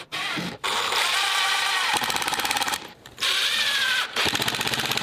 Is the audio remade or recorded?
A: remade